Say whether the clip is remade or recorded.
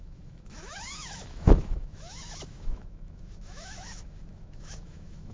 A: remade